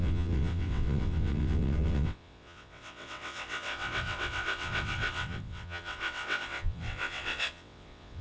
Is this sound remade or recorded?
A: remade